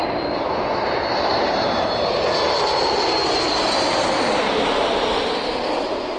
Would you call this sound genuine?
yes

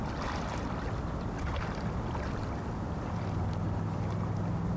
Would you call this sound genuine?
yes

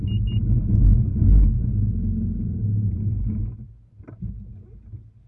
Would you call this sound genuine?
yes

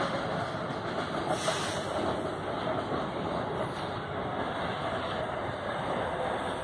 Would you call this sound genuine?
no